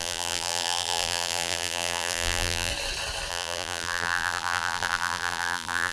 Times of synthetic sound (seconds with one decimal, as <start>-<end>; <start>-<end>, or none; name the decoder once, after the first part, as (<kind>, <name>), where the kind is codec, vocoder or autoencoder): 0.0-2.7 (vocoder, BigVGAN v2); 3.3-5.9

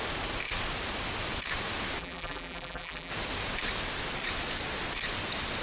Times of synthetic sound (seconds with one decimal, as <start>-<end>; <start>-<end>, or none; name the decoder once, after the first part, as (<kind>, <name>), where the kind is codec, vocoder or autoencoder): 2.0-3.1 (vocoder, BigVGAN v2)